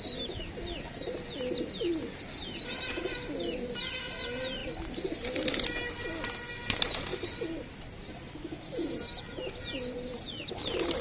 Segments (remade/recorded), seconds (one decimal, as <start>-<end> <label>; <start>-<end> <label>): 0.0-11.0 recorded